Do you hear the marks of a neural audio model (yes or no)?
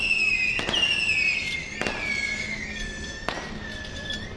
no